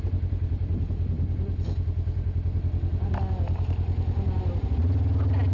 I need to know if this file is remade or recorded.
recorded